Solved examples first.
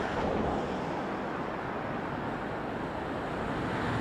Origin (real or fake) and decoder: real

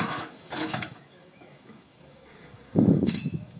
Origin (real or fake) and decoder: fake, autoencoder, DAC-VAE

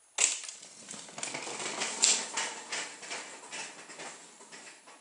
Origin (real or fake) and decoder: real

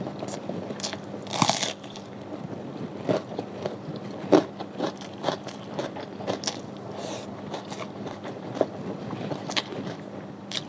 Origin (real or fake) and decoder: fake, vocoder, BigVGAN v2